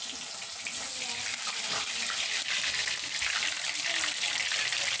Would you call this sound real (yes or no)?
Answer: yes